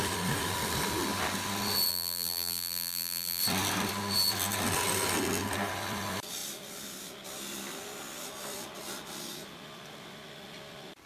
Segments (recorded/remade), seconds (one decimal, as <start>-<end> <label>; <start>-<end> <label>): 0.0-1.9 recorded; 1.9-3.4 remade; 3.4-11.1 recorded